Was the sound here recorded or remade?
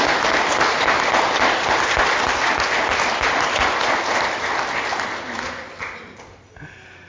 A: recorded